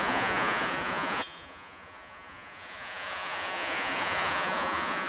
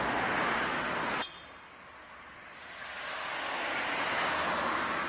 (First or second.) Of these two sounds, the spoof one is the first